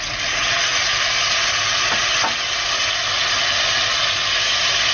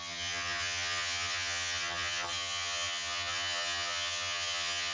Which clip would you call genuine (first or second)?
first